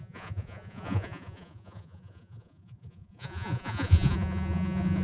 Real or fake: fake